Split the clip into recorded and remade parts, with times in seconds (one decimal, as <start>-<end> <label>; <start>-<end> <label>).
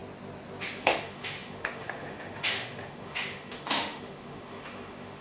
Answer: 0.0-0.8 recorded; 0.8-5.2 remade